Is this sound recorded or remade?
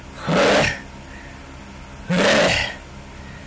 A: recorded